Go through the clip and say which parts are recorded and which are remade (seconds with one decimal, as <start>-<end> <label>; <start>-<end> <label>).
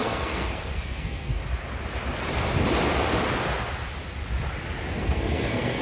0.0-1.4 remade; 1.4-4.9 recorded; 4.9-5.8 remade